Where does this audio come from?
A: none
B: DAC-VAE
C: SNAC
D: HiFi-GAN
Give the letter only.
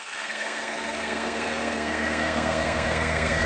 C